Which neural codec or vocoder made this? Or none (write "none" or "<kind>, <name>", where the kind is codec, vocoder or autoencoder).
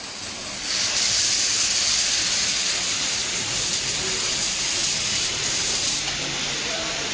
none